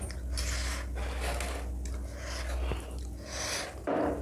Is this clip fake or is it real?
real